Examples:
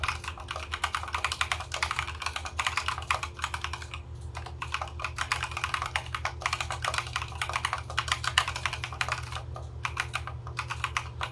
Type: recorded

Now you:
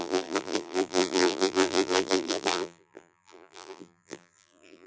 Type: remade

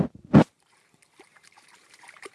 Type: remade